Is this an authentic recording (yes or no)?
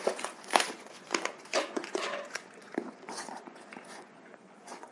no